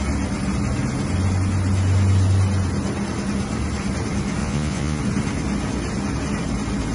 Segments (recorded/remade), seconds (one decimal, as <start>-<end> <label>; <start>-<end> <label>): 0.0-4.4 recorded; 4.4-5.0 remade; 5.0-6.9 recorded